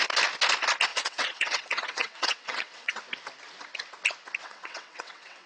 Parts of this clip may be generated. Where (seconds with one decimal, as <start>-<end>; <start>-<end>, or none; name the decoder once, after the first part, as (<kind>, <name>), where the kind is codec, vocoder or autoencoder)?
0.9-3.0 (vocoder, WaveNeXt); 4.4-5.5